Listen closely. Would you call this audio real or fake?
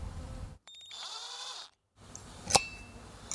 fake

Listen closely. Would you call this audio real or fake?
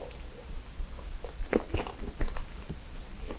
real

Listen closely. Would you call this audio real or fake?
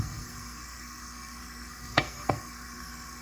fake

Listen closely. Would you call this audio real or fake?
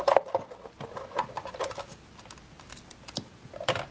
real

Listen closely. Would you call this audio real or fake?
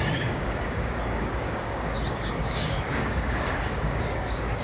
fake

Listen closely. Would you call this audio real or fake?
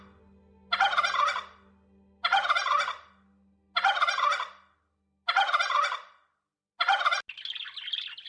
real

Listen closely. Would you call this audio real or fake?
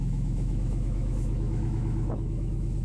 fake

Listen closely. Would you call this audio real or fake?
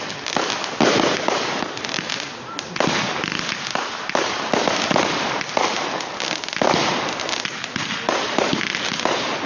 real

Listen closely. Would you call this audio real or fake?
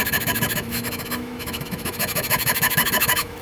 fake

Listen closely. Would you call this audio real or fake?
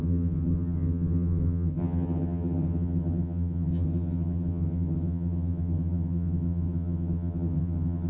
fake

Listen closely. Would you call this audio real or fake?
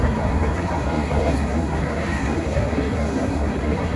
fake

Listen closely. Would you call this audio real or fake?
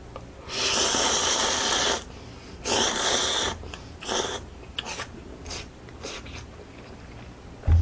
real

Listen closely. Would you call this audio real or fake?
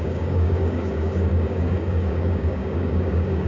fake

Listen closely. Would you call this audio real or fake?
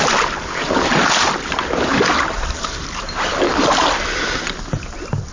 real